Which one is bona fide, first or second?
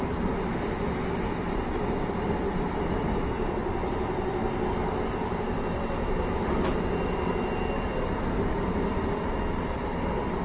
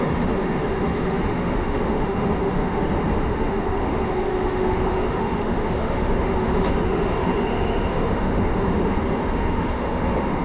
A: first